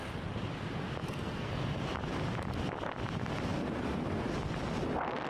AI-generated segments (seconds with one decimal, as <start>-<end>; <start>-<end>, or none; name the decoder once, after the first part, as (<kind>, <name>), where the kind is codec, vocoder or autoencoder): 1.0-1.5 (codec, SNAC)